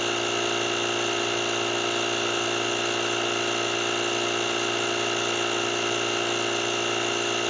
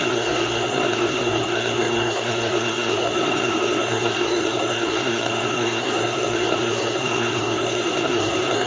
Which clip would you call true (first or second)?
first